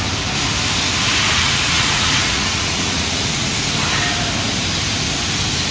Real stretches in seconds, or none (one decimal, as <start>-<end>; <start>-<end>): 0.0-1.3; 3.5-5.7